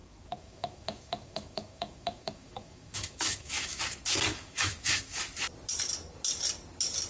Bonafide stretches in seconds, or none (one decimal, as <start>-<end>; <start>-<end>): 3.8-4.3; 5.2-7.1